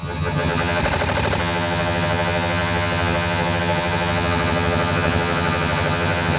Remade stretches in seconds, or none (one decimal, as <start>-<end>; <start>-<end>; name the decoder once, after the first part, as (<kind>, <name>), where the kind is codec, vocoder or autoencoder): 0.0-0.8 (vocoder, HiFi-GAN); 1.4-6.4